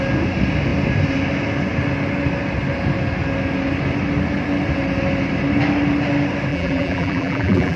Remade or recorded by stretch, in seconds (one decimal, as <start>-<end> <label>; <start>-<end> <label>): 0.0-6.5 recorded; 6.5-7.8 remade